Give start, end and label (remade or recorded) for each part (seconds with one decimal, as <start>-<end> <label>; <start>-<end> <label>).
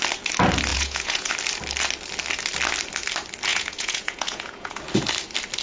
0.0-0.7 recorded; 0.7-1.3 remade; 1.3-3.5 recorded; 3.5-4.8 remade; 4.8-5.6 recorded